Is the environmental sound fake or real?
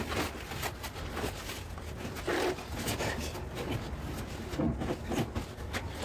real